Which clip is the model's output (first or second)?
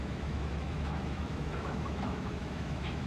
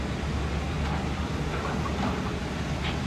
first